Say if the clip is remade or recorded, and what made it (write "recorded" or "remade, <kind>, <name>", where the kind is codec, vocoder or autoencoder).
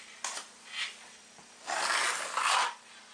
recorded